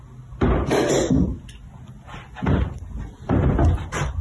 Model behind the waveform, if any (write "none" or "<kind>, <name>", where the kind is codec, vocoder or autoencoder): none